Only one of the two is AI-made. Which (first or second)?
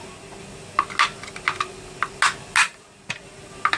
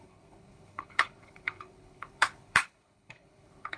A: second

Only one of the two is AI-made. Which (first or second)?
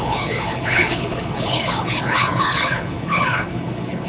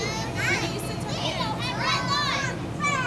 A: first